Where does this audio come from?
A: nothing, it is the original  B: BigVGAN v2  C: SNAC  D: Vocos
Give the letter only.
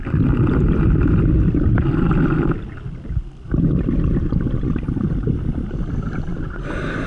A